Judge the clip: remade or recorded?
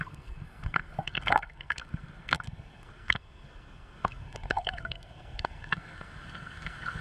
remade